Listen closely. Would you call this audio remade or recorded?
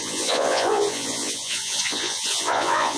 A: remade